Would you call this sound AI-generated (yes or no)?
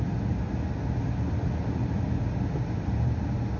no